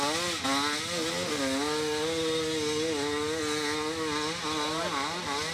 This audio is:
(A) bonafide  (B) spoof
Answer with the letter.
A